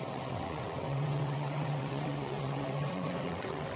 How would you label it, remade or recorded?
remade